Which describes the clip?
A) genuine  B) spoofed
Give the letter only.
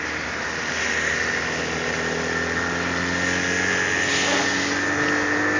A